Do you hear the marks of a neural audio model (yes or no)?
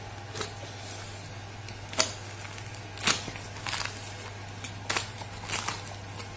no